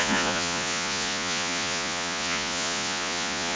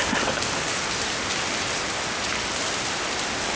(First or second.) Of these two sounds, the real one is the second